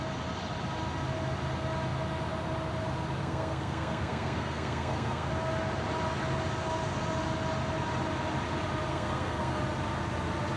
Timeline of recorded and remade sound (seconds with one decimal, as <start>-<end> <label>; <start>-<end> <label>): 0.0-3.2 recorded; 3.2-5.3 remade; 5.3-8.9 recorded; 8.9-9.6 remade; 9.6-10.6 recorded